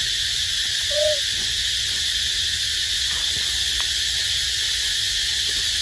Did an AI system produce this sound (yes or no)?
yes